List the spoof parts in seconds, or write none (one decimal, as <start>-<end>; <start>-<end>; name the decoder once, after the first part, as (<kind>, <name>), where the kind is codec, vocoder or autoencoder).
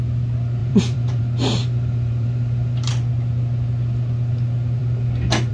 0.6-1.2 (vocoder, BigVGAN v2); 1.6-2.9